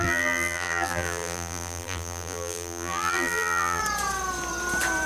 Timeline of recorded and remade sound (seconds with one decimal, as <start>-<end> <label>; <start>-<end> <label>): 0.0-3.8 remade; 3.8-5.1 recorded